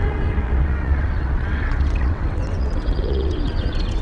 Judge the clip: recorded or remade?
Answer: remade